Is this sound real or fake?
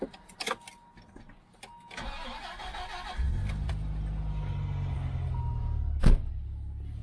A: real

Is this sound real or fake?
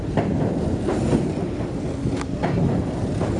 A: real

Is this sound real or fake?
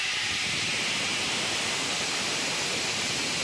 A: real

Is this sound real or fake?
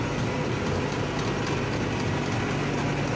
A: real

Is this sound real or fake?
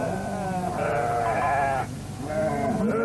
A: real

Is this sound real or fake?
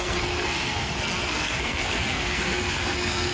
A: fake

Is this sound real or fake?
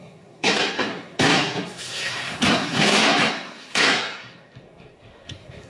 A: fake